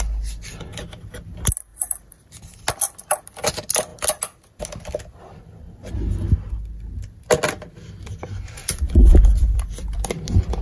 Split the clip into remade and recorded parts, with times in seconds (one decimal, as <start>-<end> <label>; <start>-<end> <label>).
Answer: 0.0-1.7 recorded; 1.7-2.5 remade; 2.5-8.6 recorded; 8.6-10.1 remade; 10.1-10.6 recorded